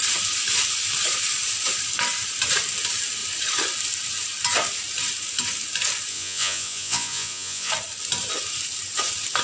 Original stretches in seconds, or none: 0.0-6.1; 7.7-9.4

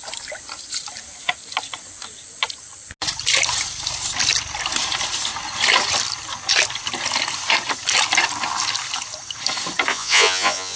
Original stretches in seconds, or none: 0.0-9.9

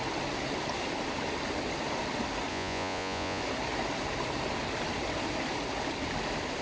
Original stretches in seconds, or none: 0.0-2.5; 3.4-6.6

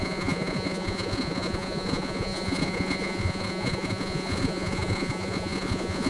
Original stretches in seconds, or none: none

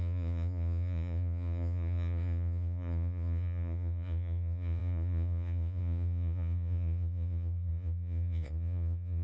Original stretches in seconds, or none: none

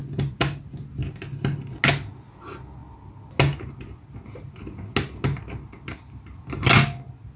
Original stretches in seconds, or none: 0.0-7.4

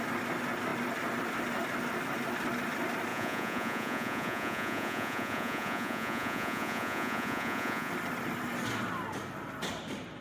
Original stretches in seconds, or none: 0.0-3.1; 7.9-10.2